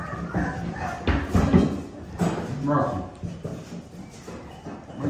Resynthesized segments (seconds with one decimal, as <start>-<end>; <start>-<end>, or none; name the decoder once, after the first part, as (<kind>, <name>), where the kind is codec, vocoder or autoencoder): none